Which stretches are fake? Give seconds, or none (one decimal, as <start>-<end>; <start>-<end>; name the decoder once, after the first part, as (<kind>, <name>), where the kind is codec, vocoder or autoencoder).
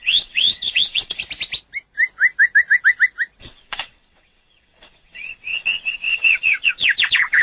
0.0-1.2 (vocoder, WaveNeXt); 3.4-7.4